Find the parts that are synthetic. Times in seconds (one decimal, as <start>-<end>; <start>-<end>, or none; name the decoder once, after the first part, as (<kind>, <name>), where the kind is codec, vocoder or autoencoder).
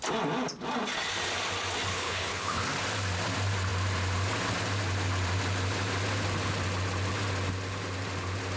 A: 1.9-2.6 (codec, HILCodec)